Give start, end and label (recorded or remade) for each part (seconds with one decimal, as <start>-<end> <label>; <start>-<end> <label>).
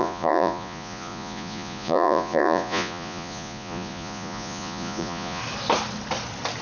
0.0-5.4 remade; 5.4-6.6 recorded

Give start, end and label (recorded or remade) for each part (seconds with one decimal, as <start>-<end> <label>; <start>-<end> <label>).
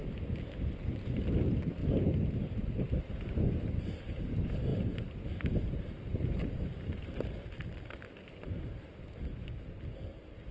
0.0-4.7 recorded; 4.7-8.0 remade; 8.0-10.5 recorded